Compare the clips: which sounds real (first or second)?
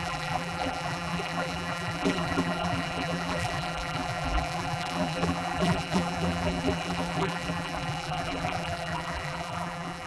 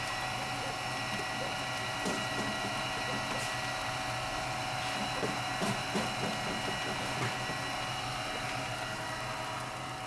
second